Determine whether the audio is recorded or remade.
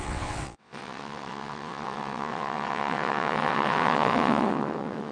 remade